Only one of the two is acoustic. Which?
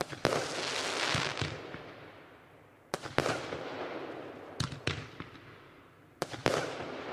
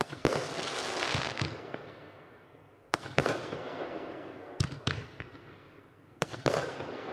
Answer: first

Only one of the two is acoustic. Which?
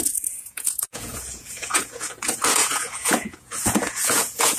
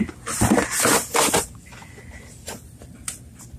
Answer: second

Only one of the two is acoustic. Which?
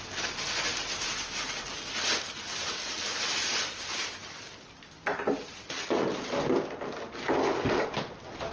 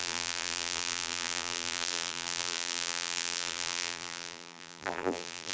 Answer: first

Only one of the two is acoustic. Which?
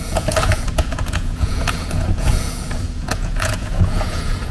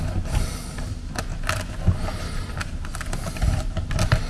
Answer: second